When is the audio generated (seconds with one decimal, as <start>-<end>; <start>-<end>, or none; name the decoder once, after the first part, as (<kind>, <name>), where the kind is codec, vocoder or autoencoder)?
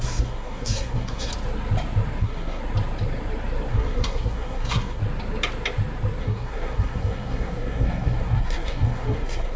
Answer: 0.0-1.3 (codec, SNAC); 2.2-2.6; 3.7-5.0; 6.2-9.6